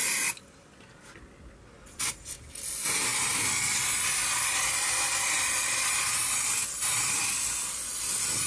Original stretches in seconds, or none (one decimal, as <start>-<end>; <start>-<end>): 0.0-8.5